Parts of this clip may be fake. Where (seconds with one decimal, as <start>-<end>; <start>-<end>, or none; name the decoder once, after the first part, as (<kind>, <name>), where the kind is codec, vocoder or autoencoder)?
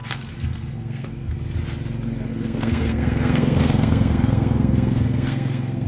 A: 0.0-1.3 (codec, SNAC); 2.3-5.9